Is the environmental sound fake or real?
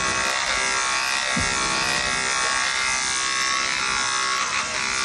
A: real